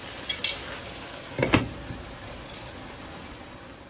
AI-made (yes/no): no